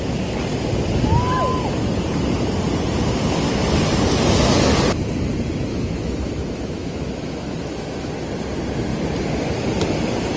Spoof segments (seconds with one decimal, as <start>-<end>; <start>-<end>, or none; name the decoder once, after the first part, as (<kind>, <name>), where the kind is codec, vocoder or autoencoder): 5.7-8.1 (autoencoder, DAC-VAE)